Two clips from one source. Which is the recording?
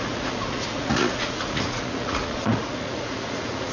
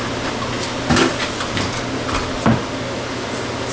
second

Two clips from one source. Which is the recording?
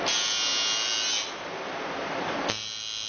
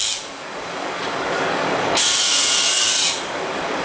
first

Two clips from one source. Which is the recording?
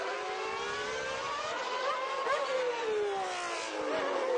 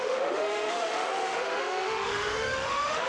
first